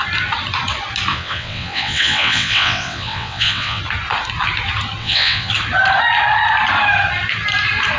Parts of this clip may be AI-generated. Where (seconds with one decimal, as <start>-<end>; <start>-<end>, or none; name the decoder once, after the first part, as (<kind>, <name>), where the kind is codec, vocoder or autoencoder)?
1.1-3.8 (vocoder, WaveNeXt); 5.0-5.5